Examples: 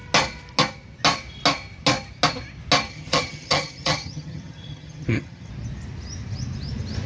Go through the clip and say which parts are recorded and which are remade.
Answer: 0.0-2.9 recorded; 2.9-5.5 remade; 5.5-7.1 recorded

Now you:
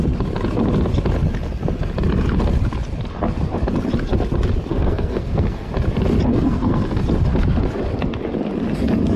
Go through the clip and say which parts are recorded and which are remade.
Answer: 0.0-4.7 recorded; 4.7-5.7 remade; 5.7-6.3 recorded; 6.3-7.0 remade; 7.0-9.2 recorded

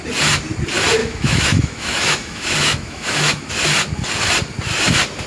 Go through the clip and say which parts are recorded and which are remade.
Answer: 0.0-1.0 recorded; 1.0-3.5 remade; 3.5-5.3 recorded

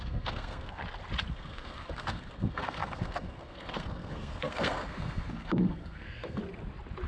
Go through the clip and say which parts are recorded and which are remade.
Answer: 0.0-0.8 remade; 0.8-1.3 recorded; 1.3-6.4 remade; 6.4-7.1 recorded

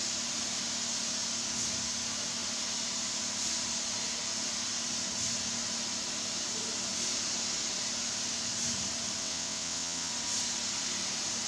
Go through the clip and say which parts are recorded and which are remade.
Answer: 0.0-9.2 recorded; 9.2-10.1 remade; 10.1-11.5 recorded

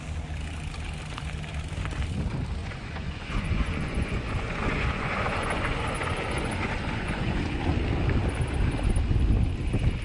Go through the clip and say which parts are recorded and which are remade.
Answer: 0.0-2.6 recorded; 2.6-7.6 remade; 7.6-10.0 recorded